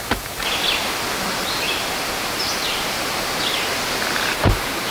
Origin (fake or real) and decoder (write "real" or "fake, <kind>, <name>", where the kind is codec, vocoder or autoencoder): real